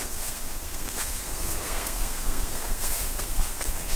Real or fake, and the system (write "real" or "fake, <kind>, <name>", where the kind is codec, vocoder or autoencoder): fake, codec, SNAC